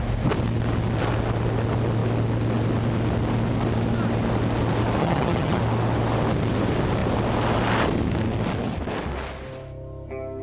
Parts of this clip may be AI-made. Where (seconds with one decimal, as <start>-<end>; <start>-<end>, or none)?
5.0-5.6